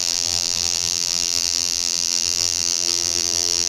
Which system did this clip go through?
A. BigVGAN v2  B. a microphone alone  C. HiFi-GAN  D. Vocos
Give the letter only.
A